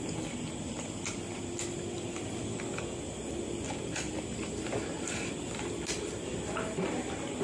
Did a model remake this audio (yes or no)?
no